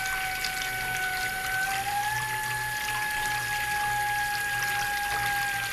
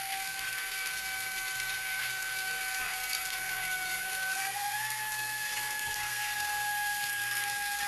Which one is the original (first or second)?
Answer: first